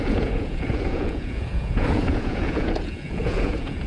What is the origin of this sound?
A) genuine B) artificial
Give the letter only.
B